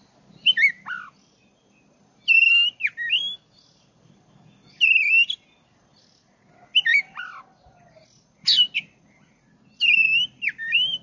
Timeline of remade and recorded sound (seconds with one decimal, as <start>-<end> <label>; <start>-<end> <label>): 0.0-11.0 recorded